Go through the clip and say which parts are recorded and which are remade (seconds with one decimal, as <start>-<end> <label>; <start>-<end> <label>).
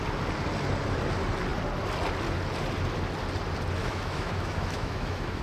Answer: 0.0-3.8 recorded; 3.8-5.4 remade